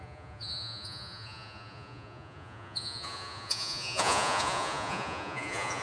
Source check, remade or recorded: remade